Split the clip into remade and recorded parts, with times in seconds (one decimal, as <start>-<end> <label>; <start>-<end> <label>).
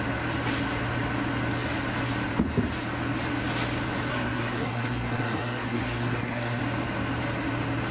0.0-4.1 recorded; 4.1-6.6 remade; 6.6-7.9 recorded